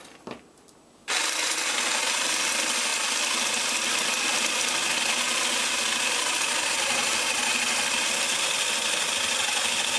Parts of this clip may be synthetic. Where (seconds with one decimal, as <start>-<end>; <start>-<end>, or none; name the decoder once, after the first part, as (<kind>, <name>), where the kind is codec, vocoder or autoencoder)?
none